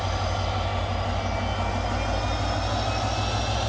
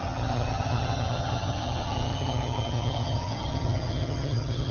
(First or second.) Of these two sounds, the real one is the first